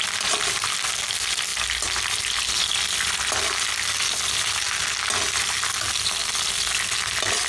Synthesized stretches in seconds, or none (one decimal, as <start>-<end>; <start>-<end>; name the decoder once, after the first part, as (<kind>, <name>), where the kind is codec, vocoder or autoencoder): none